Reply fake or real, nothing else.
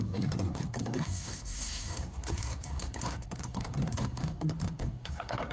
fake